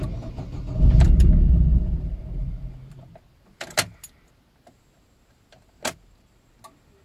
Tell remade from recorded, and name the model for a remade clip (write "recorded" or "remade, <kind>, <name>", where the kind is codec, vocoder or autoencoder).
recorded